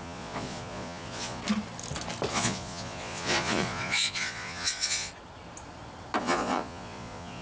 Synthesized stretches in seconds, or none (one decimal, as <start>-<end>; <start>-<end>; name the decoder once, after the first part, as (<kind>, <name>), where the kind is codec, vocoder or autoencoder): 0.0-1.4 (vocoder, Vocos); 2.3-5.1; 6.2-7.4